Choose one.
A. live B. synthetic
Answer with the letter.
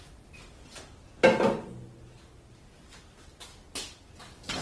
A